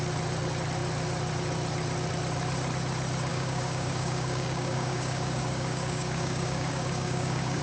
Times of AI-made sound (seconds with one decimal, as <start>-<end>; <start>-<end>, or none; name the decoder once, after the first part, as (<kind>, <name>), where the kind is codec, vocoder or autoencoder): 3.3-7.6 (codec, DAC)